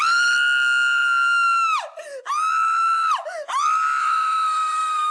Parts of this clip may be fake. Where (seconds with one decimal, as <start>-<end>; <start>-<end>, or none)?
4.0-5.1

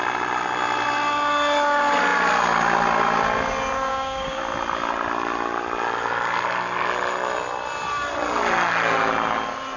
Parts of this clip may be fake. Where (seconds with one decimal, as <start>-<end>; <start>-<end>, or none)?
3.9-4.4

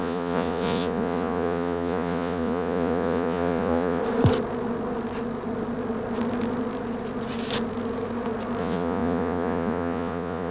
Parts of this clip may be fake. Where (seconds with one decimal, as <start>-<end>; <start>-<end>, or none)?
0.0-4.0; 8.6-10.5

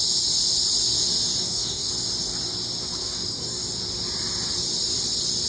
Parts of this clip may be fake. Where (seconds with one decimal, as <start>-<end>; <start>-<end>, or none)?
1.4-1.9; 3.0-3.6

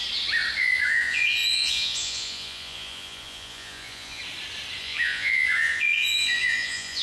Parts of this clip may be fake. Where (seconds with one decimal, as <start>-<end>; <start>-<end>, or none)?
0.6-4.2; 4.8-7.0

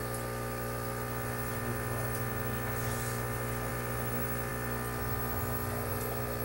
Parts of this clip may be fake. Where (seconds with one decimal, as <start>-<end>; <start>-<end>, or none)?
none